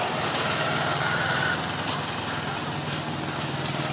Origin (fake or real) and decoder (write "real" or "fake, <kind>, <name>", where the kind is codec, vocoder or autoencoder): real